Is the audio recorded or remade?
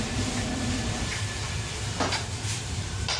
remade